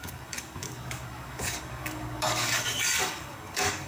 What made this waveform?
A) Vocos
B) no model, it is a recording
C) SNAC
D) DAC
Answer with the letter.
D